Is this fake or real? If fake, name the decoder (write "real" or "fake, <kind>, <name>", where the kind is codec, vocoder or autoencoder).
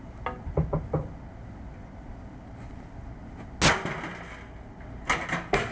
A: real